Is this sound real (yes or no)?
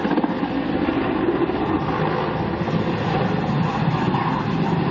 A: yes